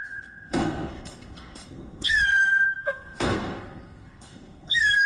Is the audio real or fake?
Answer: fake